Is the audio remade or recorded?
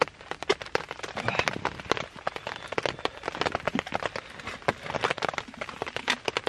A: recorded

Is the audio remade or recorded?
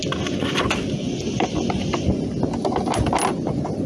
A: recorded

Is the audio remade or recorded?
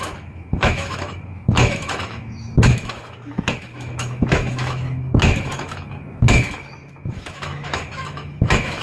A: remade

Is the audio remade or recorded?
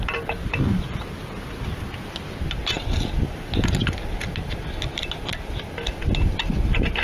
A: recorded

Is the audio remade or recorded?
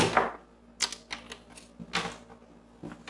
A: recorded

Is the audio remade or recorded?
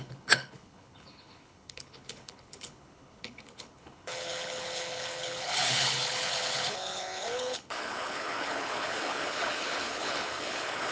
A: remade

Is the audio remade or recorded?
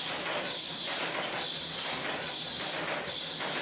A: recorded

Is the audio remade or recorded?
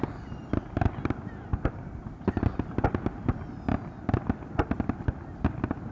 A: recorded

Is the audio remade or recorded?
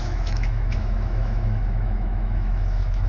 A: remade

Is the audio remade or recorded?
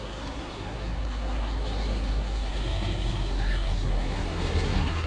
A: remade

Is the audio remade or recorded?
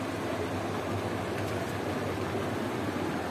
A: recorded